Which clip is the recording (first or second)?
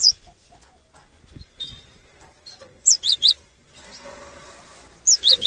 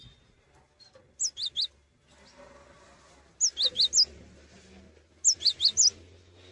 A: second